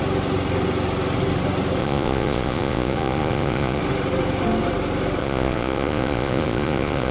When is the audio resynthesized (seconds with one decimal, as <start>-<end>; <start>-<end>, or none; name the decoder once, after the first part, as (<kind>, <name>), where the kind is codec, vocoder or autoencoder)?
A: 1.8-3.8 (vocoder, Vocos); 5.2-7.1